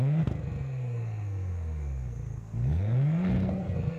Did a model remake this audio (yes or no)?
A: yes